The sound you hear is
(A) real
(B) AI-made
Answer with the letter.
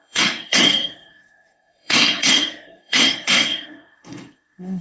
B